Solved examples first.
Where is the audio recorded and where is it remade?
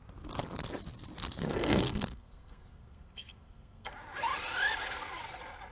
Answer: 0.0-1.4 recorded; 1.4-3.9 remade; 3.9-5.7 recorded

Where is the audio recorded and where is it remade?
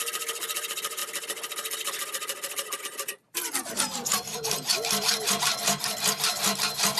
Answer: 0.0-7.0 recorded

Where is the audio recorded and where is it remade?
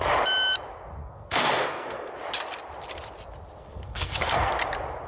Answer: 0.0-1.0 recorded; 1.0-2.1 remade; 2.1-3.6 recorded; 3.6-4.5 remade; 4.5-5.1 recorded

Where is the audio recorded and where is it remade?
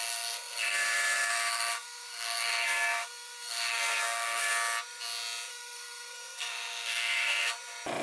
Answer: 0.0-4.5 remade; 4.5-5.5 recorded; 5.5-7.5 remade; 7.5-8.0 recorded